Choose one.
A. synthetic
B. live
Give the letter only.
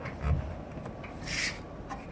B